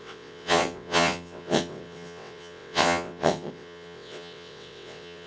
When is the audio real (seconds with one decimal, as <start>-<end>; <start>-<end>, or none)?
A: none